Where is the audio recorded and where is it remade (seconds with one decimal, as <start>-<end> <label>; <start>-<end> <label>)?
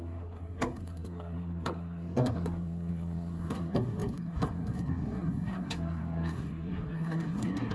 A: 0.0-7.7 remade